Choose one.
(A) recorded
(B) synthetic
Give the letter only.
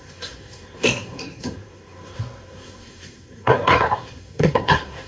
B